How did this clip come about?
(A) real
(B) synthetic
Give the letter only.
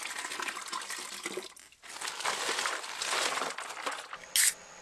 A